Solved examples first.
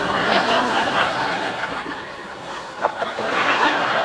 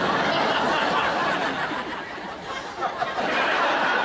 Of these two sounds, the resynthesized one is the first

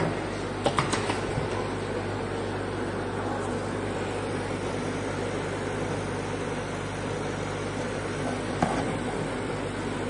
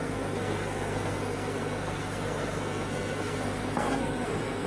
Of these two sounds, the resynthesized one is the second